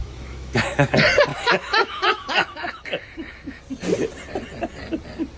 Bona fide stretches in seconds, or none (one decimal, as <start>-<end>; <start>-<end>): 0.9-1.3; 3.6-5.4